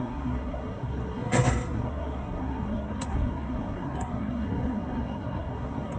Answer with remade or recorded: remade